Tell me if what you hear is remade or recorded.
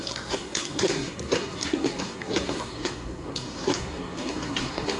remade